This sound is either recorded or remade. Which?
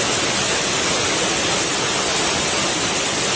recorded